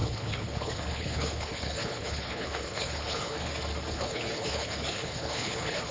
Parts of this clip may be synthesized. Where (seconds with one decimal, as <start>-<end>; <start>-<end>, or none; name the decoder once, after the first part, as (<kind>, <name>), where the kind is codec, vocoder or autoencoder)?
0.0-3.5 (codec, HILCodec); 3.9-5.9